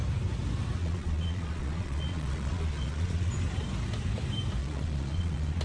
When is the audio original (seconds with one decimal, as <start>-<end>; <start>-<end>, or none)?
0.0-0.8; 3.3-4.6